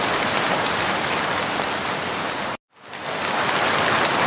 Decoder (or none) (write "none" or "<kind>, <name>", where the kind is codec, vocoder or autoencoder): none